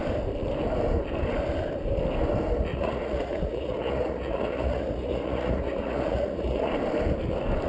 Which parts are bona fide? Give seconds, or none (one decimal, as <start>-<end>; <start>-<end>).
0.0-2.7; 6.7-7.7